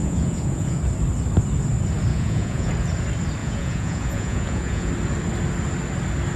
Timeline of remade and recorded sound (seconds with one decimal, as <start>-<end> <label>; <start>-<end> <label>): 0.0-0.8 remade; 0.8-2.1 recorded; 2.1-2.7 remade; 2.7-3.4 recorded; 3.4-4.9 remade; 4.9-6.4 recorded